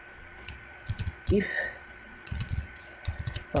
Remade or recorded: remade